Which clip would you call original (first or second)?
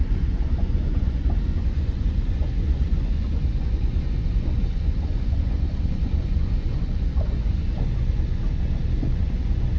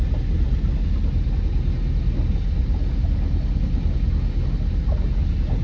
second